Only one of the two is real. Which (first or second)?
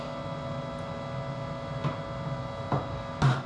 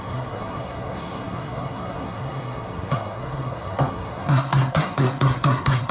first